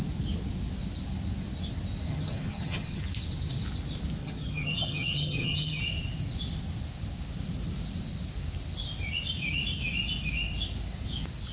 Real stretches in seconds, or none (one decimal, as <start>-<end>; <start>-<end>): 0.0-2.1; 3.0-4.2; 5.8-11.5